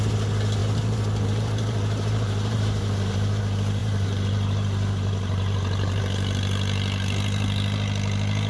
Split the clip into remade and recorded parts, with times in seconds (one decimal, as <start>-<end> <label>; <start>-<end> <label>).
0.0-0.6 recorded; 0.6-3.4 remade; 3.4-3.8 recorded; 3.8-6.0 remade; 6.0-8.5 recorded